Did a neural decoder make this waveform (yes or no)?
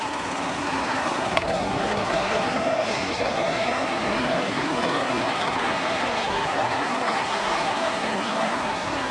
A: yes